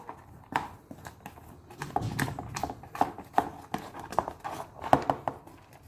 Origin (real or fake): real